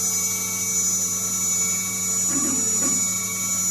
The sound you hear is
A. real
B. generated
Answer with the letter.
A